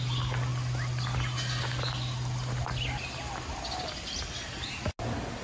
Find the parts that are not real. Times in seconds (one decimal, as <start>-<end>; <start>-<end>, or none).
none